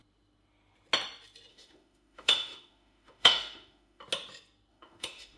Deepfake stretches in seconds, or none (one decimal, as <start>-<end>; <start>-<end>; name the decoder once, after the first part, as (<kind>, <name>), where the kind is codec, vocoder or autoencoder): 1.5-4.0 (autoencoder, DAC-VAE); 4.7-5.4